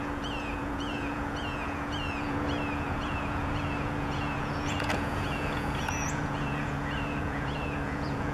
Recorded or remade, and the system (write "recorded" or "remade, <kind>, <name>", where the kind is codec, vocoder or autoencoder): remade, vocoder, Vocos